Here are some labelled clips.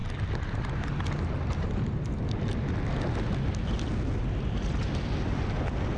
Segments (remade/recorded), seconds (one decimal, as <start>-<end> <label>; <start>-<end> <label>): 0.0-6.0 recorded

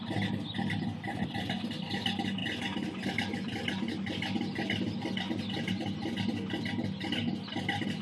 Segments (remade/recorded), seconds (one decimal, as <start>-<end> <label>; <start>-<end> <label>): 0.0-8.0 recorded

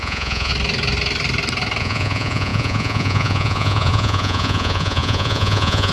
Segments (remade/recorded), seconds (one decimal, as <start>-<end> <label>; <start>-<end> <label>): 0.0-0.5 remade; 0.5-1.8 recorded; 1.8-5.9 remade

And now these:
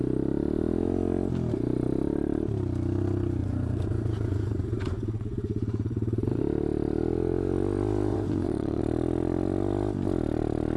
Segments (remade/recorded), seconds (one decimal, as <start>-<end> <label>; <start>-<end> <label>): 0.0-3.4 recorded; 3.4-6.4 remade; 6.4-8.1 recorded; 8.1-8.8 remade; 8.8-10.8 recorded

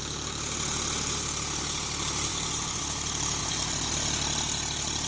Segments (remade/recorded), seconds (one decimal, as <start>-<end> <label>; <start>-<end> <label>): 0.0-2.3 recorded; 2.3-2.8 remade; 2.8-3.4 recorded; 3.4-3.9 remade; 3.9-5.1 recorded

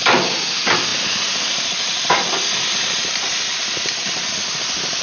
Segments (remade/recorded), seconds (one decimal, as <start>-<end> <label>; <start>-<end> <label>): 0.0-5.0 recorded

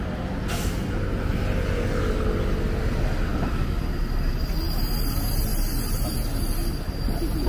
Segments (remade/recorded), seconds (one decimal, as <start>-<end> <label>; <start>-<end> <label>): 0.0-7.5 recorded

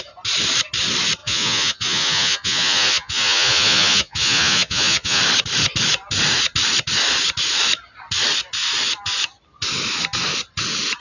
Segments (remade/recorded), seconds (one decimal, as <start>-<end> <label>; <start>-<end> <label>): 0.0-1.2 recorded; 1.2-5.2 remade; 5.2-11.0 recorded